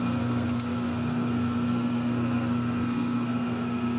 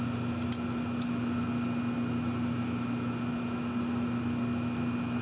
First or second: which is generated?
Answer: first